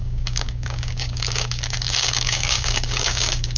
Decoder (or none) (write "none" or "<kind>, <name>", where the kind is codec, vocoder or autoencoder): codec, DAC